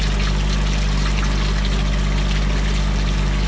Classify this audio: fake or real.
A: real